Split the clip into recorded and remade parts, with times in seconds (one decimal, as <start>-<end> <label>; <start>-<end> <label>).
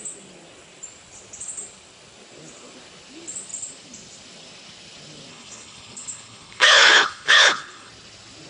0.0-5.3 recorded; 5.3-7.9 remade; 7.9-8.5 recorded